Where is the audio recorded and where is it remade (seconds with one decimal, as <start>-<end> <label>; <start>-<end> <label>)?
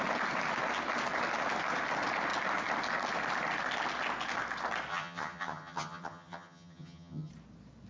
0.0-4.9 recorded; 4.9-7.3 remade; 7.3-7.9 recorded